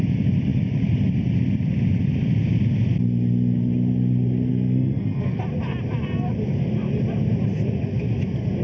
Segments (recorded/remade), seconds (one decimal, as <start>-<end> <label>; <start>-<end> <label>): 0.0-4.5 recorded; 4.5-5.4 remade; 5.4-8.6 recorded